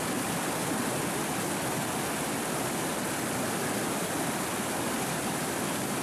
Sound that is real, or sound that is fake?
real